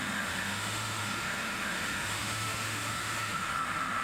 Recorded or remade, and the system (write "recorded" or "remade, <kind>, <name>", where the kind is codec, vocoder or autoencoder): remade, autoencoder, DAC-VAE